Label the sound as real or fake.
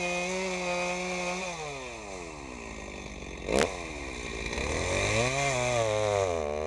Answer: real